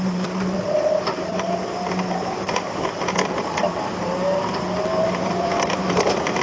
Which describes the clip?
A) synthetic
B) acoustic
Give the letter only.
A